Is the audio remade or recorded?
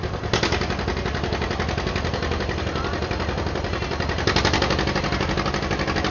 recorded